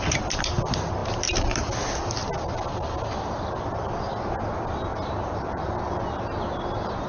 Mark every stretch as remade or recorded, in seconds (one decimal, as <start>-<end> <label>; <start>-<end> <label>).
0.0-4.9 recorded; 4.9-5.6 remade; 5.6-7.1 recorded